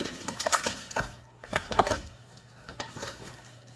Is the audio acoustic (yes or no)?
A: no